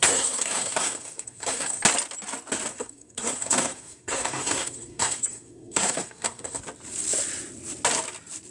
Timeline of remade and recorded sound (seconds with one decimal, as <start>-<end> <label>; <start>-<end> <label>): 0.0-1.8 remade; 1.8-2.7 recorded; 2.7-6.6 remade; 6.6-8.5 recorded